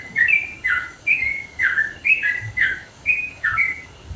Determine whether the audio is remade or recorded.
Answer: remade